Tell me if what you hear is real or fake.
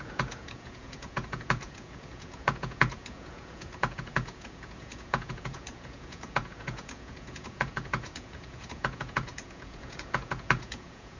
fake